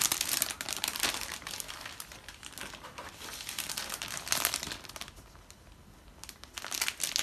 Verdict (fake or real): real